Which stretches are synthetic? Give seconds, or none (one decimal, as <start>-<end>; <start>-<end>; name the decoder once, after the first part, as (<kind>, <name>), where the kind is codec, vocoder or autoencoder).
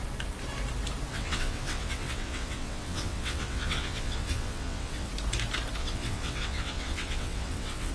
1.1-5.1 (vocoder, WaveNeXt); 5.8-7.9